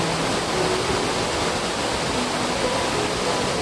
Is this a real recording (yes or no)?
yes